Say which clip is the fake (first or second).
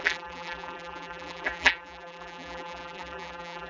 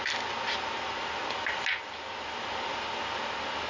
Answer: first